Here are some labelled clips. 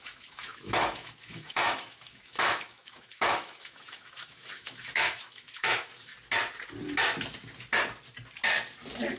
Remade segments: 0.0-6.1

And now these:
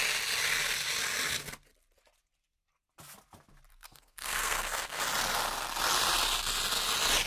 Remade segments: 3.7-5.0

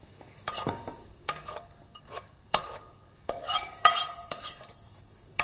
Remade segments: 0.0-5.4

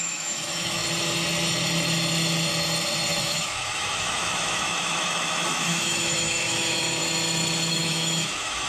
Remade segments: 0.0-0.8; 3.2-7.0; 7.7-8.7

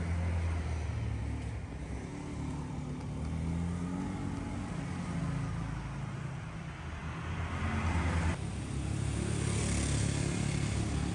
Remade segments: none

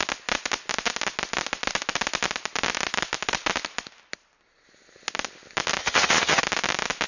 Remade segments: 5.8-6.4

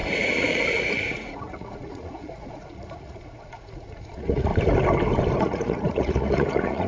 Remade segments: 0.0-4.5; 5.4-6.9